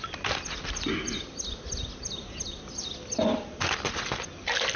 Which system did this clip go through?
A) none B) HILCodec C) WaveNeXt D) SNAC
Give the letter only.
A